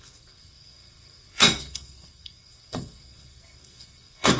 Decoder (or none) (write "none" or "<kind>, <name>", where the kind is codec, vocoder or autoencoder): codec, SNAC